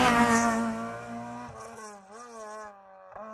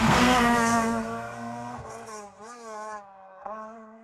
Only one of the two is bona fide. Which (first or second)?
first